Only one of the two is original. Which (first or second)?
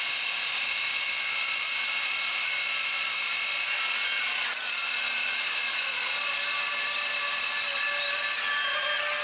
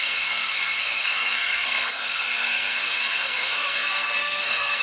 first